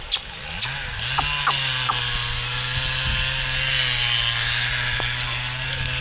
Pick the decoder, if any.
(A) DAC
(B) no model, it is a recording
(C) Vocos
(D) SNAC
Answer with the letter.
B